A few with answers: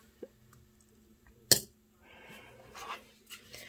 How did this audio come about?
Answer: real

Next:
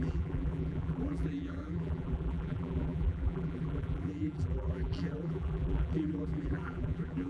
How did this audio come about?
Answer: fake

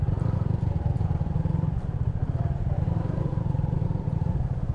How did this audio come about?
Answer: fake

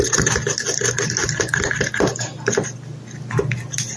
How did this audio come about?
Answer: real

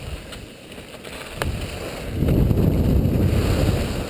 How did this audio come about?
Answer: real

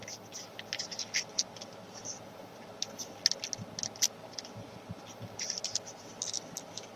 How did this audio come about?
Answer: real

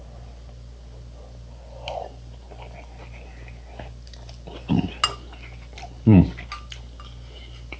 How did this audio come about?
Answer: real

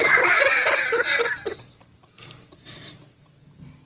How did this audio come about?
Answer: fake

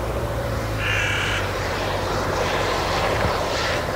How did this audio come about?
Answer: fake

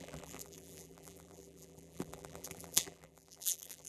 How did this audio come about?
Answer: fake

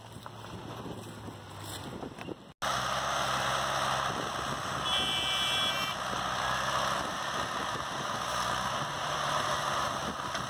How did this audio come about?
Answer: real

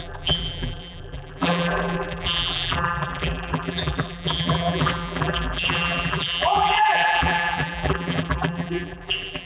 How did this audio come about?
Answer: fake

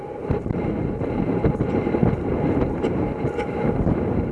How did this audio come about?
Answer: fake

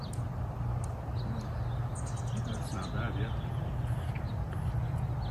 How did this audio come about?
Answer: real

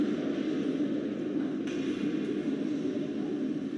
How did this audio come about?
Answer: real